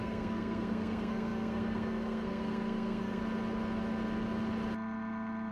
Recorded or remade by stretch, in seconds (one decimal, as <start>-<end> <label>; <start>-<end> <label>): 0.0-3.2 remade; 3.2-5.5 recorded